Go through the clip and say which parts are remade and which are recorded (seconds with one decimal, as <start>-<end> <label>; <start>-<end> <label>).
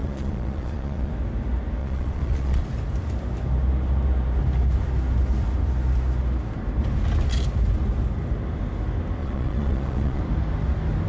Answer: 0.0-1.1 remade; 1.1-1.8 recorded; 1.8-2.6 remade; 2.6-9.2 recorded; 9.2-10.2 remade; 10.2-11.1 recorded